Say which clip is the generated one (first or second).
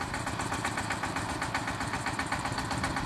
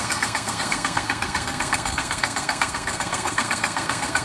second